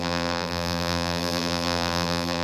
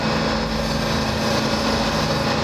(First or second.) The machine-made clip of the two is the first